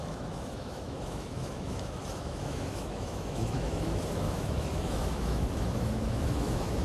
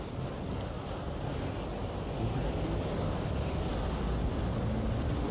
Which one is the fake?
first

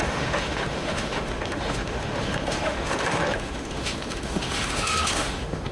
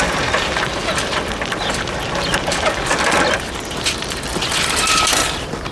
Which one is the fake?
first